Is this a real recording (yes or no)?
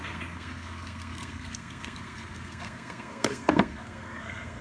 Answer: no